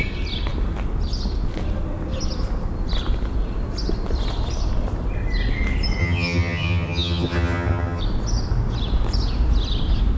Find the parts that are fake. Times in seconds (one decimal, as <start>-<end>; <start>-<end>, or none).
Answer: 6.0-8.0